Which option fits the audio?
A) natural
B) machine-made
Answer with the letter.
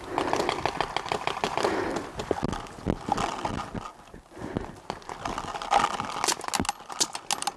A